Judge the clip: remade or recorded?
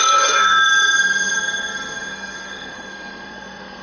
remade